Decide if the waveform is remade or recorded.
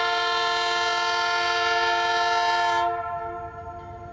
recorded